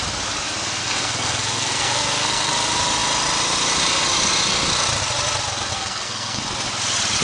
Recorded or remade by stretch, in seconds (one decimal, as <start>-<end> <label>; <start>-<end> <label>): 0.0-0.8 recorded; 0.8-2.5 remade; 2.5-5.7 recorded; 5.7-6.4 remade; 6.4-7.2 recorded